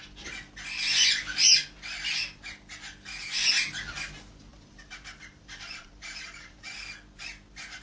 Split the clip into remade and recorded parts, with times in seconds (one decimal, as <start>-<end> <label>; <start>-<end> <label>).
0.0-4.5 recorded; 4.5-6.8 remade; 6.8-7.8 recorded